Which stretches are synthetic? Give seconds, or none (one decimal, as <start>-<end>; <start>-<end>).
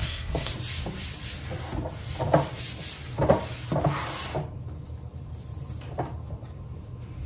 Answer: 0.0-0.5